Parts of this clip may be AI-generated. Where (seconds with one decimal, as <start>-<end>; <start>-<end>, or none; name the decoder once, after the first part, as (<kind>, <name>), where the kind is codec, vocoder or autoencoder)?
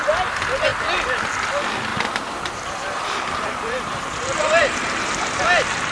1.9-5.4 (vocoder, BigVGAN v2)